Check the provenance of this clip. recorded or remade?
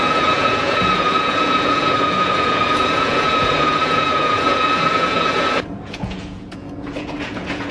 remade